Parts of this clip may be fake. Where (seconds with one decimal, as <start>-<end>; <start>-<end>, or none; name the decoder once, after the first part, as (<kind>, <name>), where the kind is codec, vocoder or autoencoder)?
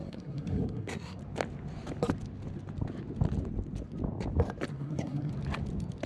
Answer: 0.0-1.2 (codec, SNAC); 4.7-5.3